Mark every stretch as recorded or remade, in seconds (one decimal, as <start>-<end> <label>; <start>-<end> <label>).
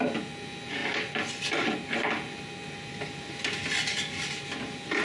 0.0-5.0 recorded